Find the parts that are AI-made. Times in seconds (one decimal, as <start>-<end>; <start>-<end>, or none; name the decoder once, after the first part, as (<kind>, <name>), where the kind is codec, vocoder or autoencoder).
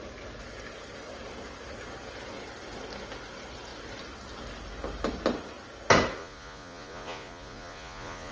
6.2-8.3 (vocoder, Vocos)